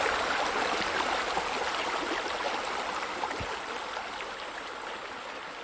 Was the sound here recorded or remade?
recorded